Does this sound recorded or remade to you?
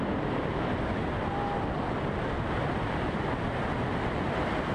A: recorded